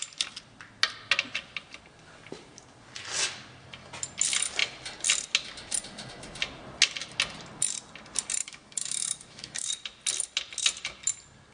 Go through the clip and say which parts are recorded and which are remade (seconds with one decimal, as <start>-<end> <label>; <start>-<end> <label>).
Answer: 0.0-8.4 recorded; 8.4-9.7 remade; 9.7-11.5 recorded